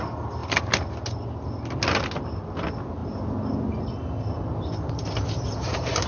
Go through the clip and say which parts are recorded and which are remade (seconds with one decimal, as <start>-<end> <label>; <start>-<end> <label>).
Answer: 0.0-6.1 recorded